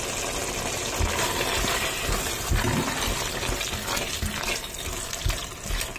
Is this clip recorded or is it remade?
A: recorded